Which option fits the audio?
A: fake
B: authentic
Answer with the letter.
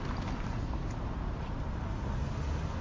B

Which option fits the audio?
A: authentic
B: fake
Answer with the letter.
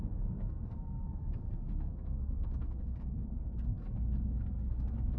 B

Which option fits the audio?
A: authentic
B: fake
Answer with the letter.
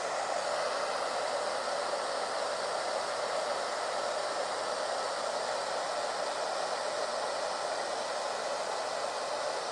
A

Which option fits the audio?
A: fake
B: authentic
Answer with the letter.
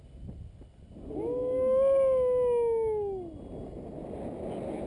B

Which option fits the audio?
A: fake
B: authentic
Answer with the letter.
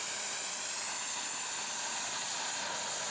B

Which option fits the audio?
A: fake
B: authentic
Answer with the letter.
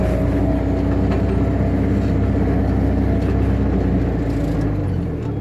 B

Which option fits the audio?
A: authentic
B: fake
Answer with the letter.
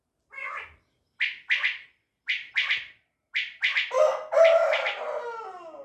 A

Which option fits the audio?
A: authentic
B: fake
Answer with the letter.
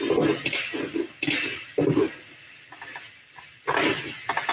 A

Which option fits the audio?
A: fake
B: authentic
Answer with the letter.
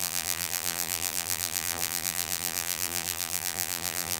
A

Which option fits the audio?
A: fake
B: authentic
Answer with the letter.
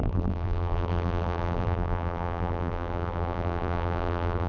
A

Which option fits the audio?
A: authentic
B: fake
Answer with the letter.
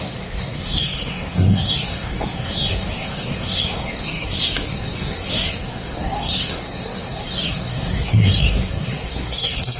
B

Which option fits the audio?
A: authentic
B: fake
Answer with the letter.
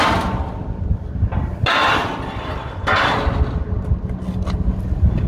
A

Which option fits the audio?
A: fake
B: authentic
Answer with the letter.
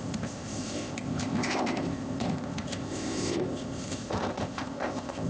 A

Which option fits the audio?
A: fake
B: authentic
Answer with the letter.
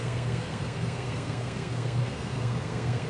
A